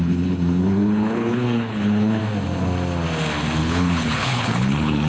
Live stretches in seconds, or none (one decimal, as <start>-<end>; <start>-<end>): 2.2-3.6